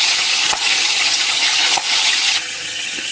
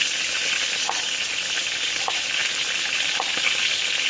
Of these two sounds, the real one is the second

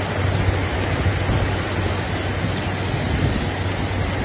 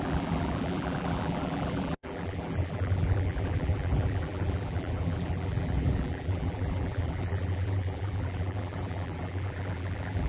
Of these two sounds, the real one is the first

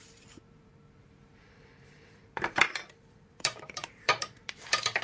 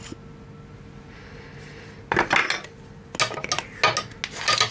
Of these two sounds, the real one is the second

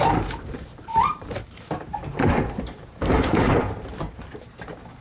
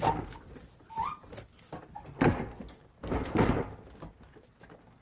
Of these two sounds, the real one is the second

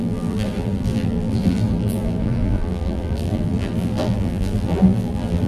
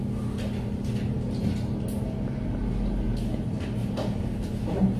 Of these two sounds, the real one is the second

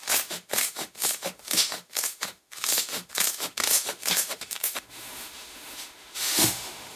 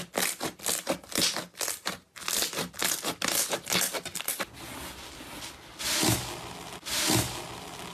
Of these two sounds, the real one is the second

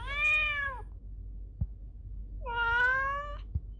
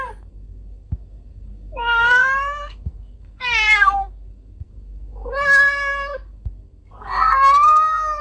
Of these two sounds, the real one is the first